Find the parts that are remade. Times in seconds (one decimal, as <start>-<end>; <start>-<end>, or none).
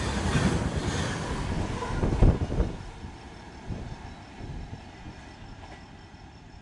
none